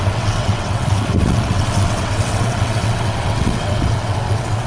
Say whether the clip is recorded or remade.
remade